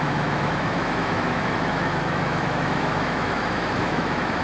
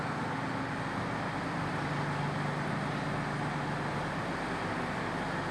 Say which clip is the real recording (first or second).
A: second